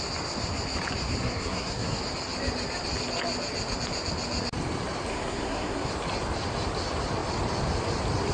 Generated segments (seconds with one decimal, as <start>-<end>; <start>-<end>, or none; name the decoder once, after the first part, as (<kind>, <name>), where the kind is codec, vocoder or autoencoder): 1.2-2.0 (codec, SNAC); 5.1-5.9